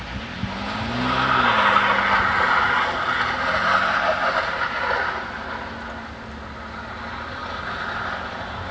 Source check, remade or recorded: recorded